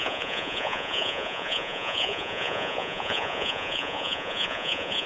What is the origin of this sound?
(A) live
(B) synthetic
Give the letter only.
B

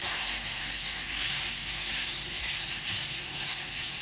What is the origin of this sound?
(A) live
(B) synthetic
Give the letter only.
B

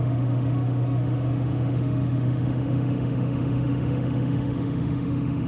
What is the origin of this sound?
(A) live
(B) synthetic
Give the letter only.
B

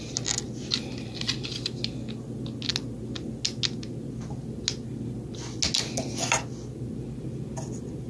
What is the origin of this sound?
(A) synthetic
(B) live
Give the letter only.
B